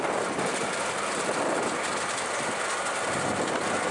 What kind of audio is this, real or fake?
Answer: real